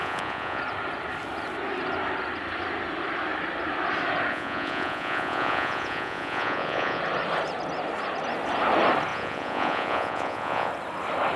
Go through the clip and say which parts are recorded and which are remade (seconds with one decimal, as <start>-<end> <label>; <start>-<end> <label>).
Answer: 0.0-0.6 remade; 0.6-4.3 recorded; 4.3-7.0 remade; 7.0-9.1 recorded; 9.1-10.7 remade; 10.7-11.4 recorded